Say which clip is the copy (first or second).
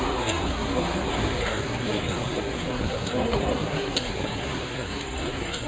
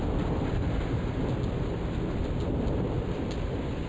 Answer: first